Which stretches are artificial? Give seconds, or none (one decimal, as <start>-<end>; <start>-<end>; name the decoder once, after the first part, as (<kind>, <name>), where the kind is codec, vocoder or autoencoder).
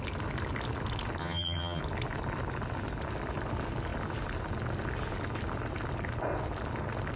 1.2-1.8 (vocoder, HiFi-GAN)